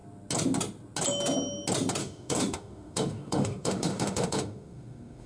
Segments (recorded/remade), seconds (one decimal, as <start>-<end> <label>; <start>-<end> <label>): 0.0-2.0 recorded; 2.0-5.3 remade